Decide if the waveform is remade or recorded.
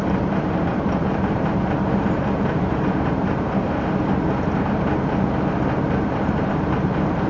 remade